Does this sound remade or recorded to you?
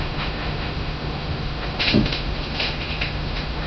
remade